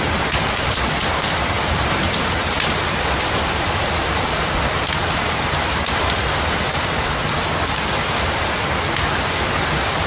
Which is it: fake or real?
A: real